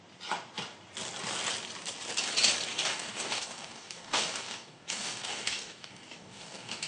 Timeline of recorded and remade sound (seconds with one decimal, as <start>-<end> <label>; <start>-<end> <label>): 0.0-2.7 recorded; 2.7-6.9 remade